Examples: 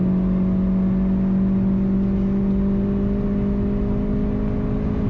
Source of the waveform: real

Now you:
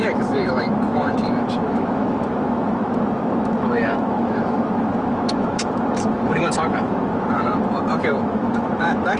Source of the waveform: fake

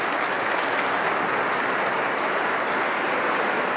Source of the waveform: real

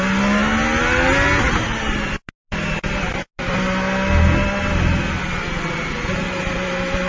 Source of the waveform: real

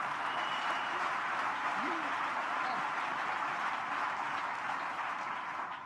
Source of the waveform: fake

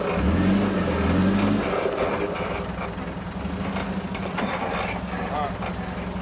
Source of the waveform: real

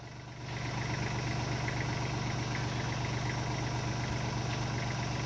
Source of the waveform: real